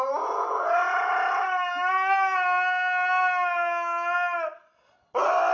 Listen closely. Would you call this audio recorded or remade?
recorded